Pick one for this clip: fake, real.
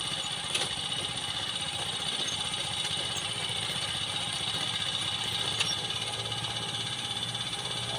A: real